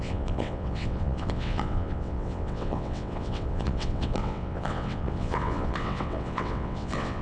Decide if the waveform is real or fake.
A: fake